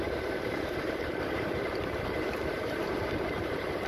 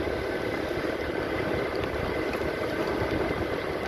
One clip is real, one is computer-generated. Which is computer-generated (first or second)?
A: first